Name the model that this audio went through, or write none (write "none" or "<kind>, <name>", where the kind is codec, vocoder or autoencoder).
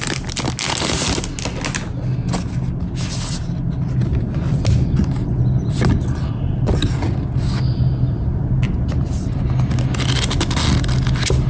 none